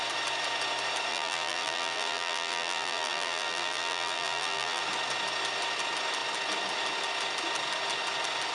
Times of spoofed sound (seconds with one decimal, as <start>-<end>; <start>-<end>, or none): 1.1-4.8